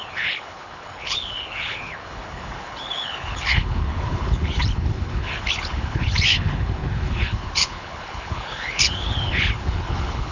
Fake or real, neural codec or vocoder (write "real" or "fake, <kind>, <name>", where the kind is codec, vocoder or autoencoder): fake, codec, HILCodec